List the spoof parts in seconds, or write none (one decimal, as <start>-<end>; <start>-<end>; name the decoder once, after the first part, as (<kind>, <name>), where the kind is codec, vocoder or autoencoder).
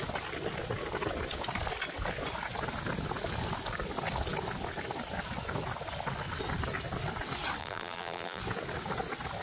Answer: 7.6-8.4 (vocoder, BigVGAN v2)